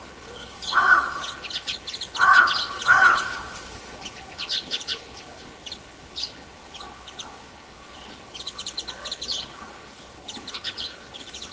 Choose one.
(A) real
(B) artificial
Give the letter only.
B